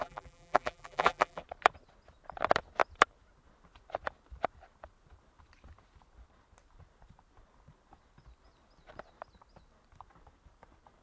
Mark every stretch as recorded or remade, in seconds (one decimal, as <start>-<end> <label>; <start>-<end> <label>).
0.0-1.4 remade; 1.4-11.0 recorded